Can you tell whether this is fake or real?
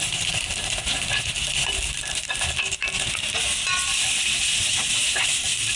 real